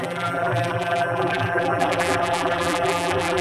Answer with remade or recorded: remade